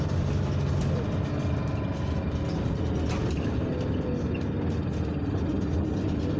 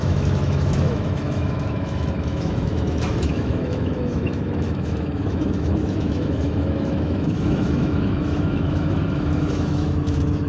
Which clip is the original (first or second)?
first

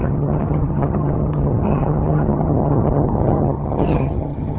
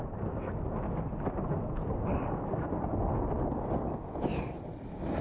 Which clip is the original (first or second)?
second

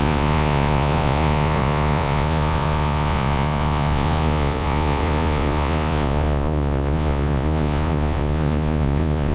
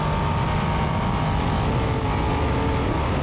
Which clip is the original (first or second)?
second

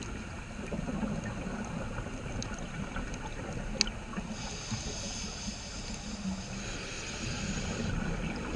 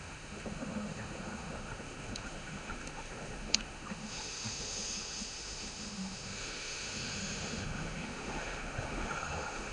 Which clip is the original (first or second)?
first